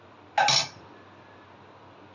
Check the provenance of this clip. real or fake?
real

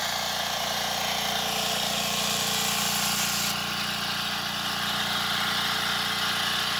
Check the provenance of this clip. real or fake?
real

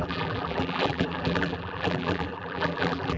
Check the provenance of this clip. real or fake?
fake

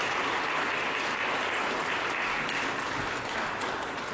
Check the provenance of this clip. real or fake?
real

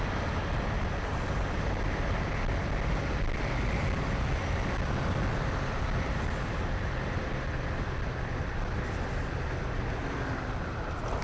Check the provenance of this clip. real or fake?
real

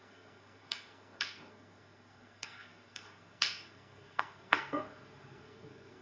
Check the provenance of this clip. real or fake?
fake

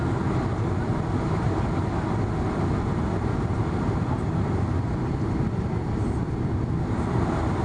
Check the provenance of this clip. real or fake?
real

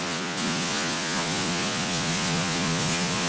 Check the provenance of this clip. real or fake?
fake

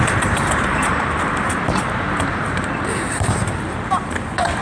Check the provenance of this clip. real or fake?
fake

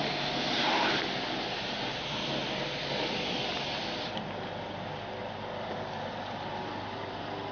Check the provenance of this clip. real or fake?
real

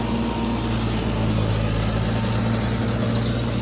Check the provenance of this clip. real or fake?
real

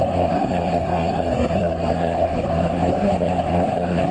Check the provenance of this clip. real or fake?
fake